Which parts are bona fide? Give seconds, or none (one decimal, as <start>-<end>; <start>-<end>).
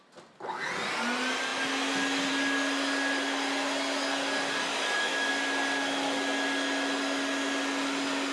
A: 0.0-4.7; 5.3-8.3